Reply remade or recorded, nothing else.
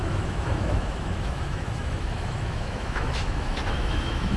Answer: remade